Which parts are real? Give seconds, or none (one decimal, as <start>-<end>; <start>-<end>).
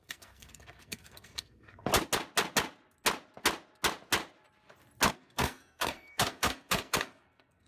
1.9-5.1